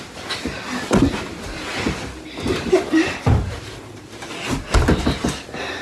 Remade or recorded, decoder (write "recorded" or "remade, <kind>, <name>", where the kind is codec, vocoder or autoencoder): recorded